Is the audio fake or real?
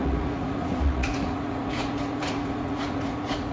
fake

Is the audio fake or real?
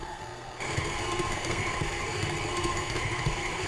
fake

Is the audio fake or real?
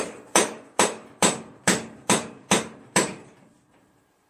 fake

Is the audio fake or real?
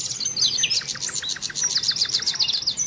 real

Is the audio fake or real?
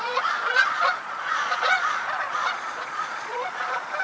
fake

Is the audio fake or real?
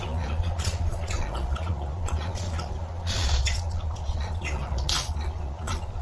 fake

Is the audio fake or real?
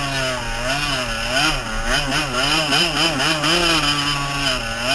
real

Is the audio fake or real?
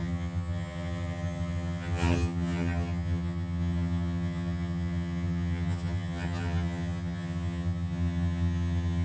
fake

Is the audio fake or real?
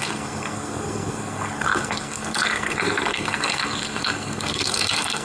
fake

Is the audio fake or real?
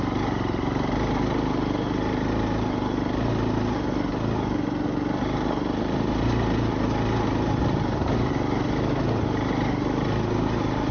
real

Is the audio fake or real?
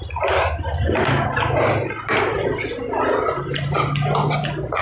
real